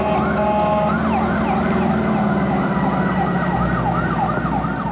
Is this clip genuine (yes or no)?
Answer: yes